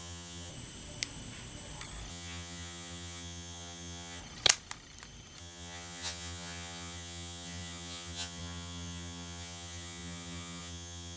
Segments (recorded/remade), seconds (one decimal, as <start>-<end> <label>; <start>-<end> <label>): 0.0-0.5 remade; 0.5-2.1 recorded; 2.1-4.2 remade; 4.2-5.4 recorded; 5.4-11.2 remade